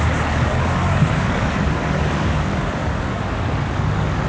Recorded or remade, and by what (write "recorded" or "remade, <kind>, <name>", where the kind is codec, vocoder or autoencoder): remade, codec, DAC